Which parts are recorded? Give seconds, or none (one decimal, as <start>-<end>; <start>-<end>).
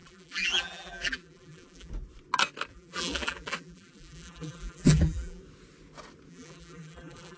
1.9-2.7; 5.4-6.3